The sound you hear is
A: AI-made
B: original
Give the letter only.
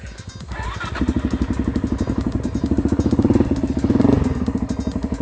B